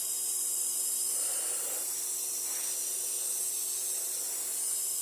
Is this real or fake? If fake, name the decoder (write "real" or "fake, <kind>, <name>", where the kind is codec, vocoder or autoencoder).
real